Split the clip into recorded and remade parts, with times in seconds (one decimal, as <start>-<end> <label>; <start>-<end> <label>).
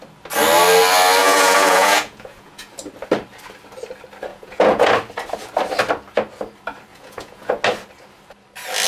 0.0-1.2 recorded; 1.2-2.7 remade; 2.7-4.3 recorded; 4.3-4.9 remade; 4.9-6.9 recorded; 6.9-7.5 remade; 7.5-8.9 recorded